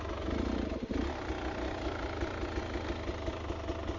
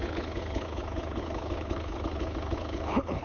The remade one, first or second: second